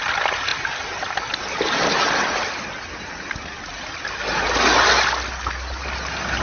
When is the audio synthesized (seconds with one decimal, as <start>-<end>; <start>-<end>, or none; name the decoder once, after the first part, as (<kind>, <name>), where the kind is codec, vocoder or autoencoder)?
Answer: none